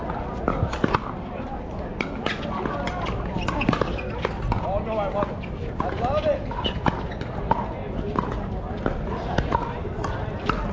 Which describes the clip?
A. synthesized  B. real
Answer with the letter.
B